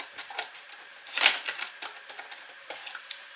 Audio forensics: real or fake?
fake